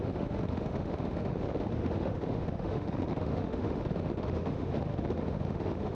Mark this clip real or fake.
fake